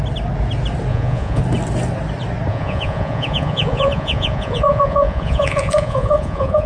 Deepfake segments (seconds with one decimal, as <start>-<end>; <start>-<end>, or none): 0.9-1.4; 2.5-6.7